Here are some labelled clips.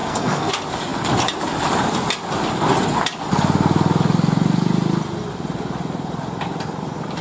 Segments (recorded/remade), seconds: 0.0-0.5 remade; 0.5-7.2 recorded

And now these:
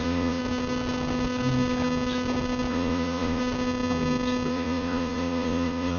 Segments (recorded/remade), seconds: 0.0-0.4 remade; 0.4-2.7 recorded; 2.7-3.4 remade; 3.4-4.5 recorded; 4.5-6.0 remade

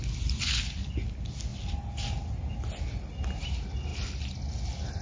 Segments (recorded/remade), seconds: 0.0-5.0 recorded

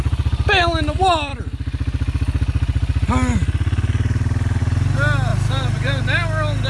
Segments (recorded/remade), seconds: 0.0-5.3 recorded; 5.3-6.0 remade; 6.0-6.7 recorded